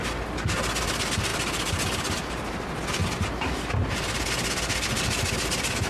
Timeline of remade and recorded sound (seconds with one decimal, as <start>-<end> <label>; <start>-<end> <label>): 0.0-5.9 recorded

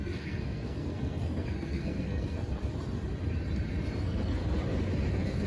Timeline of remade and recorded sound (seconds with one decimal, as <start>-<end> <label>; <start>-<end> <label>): 0.0-2.5 remade; 2.5-4.0 recorded; 4.0-4.4 remade; 4.4-5.1 recorded; 5.1-5.5 remade

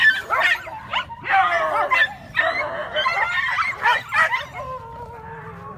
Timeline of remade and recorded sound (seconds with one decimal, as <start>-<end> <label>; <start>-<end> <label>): 0.0-5.8 recorded

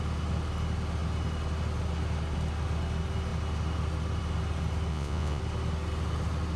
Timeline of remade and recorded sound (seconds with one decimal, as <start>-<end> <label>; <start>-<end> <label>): 0.0-4.9 recorded; 4.9-5.4 remade; 5.4-6.6 recorded

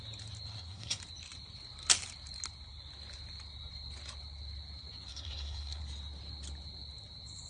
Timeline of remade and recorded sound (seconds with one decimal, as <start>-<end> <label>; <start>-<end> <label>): 0.0-0.5 recorded; 0.5-1.0 remade; 1.0-5.1 recorded; 5.1-5.8 remade; 5.8-7.5 recorded

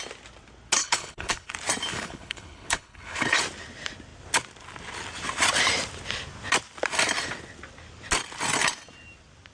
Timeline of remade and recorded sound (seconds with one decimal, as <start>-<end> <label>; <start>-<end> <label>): 0.0-0.8 recorded; 0.8-1.5 remade; 1.5-1.9 recorded; 1.9-3.4 remade; 3.4-9.5 recorded

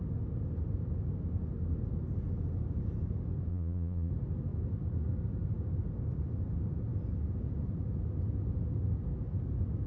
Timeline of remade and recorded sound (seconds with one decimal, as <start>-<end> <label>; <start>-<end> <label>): 0.0-3.5 recorded; 3.5-4.1 remade; 4.1-9.9 recorded

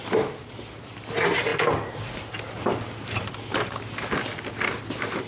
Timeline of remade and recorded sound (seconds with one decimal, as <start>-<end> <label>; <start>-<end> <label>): 0.0-5.3 recorded